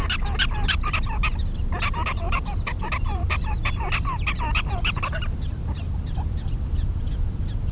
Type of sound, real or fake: real